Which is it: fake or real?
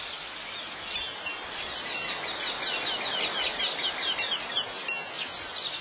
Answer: real